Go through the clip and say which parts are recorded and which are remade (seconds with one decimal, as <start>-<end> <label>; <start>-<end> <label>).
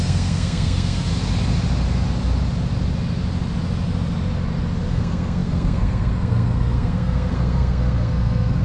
0.0-1.1 remade; 1.1-4.9 recorded; 4.9-8.6 remade